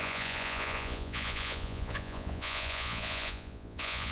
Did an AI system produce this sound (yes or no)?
yes